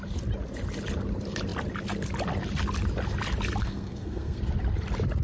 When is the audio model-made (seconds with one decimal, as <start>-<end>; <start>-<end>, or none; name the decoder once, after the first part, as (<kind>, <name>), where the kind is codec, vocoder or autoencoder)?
3.6-4.4 (codec, SNAC)